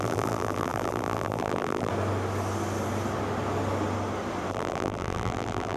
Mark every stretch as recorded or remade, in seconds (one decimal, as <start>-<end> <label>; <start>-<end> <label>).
0.0-1.9 remade; 1.9-4.5 recorded; 4.5-5.8 remade